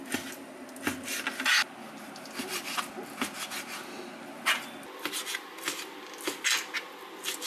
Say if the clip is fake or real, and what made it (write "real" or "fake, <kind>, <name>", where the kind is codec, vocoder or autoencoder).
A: real